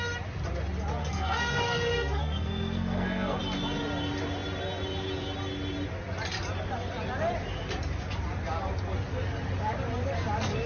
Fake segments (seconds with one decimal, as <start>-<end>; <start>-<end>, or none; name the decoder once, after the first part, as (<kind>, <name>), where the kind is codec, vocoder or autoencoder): 1.0-3.4 (codec, SNAC)